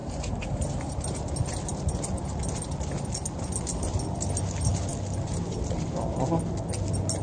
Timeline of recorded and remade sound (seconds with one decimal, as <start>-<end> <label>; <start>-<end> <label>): 0.0-1.3 remade; 1.3-7.2 recorded